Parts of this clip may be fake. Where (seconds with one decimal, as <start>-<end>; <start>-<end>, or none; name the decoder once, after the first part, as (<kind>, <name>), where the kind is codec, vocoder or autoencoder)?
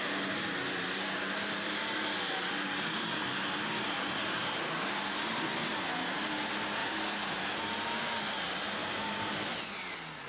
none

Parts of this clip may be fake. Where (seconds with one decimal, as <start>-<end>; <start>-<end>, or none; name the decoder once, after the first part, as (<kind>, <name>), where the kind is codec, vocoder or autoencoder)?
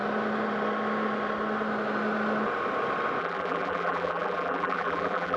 3.2-5.4 (vocoder, BigVGAN v2)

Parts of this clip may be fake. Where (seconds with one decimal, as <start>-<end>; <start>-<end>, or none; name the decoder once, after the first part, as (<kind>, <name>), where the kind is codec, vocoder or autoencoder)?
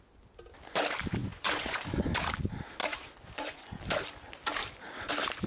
1.2-2.1 (vocoder, Vocos); 2.8-3.7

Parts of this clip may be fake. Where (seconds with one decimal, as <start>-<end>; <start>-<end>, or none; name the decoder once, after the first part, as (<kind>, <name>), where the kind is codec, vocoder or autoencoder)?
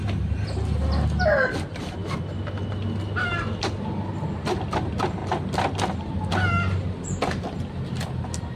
none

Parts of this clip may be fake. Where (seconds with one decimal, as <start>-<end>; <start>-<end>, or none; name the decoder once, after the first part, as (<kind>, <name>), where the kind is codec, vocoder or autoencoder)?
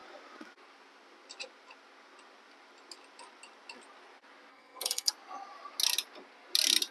4.5-5.1 (codec, SNAC)